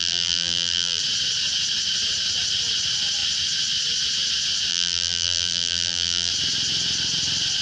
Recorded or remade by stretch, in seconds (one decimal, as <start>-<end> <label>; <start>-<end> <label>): 0.0-1.0 remade; 1.0-4.7 recorded; 4.7-6.3 remade; 6.3-7.6 recorded